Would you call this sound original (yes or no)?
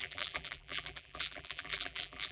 no